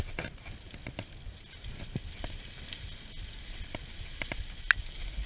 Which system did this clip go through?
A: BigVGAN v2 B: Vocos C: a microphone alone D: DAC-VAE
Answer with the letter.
C